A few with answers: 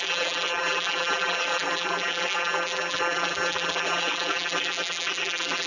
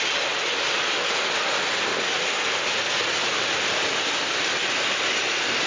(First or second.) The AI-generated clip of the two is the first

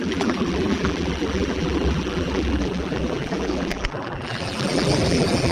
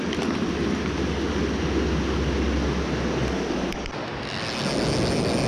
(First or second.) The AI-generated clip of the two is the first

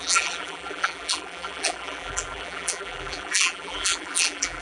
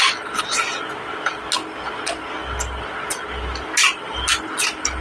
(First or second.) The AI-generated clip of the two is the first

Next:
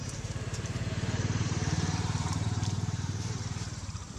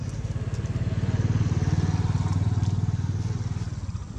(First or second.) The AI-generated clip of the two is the first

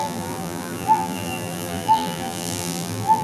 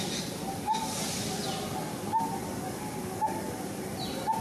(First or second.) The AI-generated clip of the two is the first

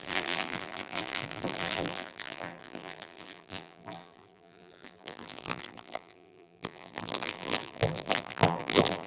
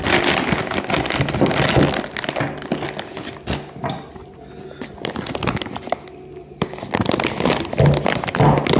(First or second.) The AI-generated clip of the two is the first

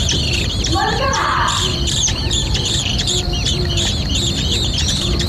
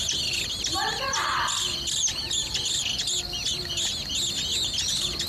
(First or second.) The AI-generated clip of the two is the first